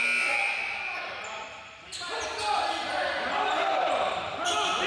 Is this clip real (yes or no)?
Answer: yes